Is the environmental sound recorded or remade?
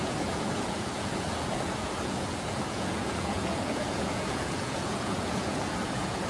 remade